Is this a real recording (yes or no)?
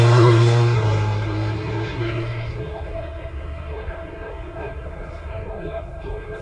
no